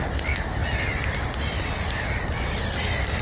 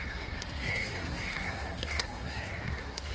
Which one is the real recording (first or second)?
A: first